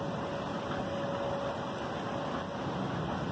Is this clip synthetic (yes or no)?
no